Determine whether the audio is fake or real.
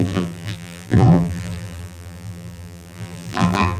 fake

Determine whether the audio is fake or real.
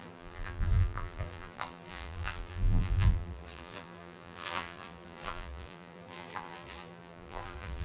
fake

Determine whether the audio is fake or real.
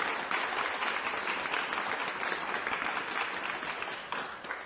real